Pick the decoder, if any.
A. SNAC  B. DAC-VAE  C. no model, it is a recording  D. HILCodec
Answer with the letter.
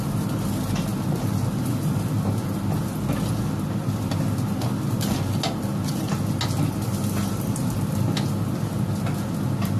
C